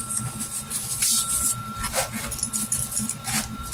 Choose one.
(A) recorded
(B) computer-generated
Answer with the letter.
B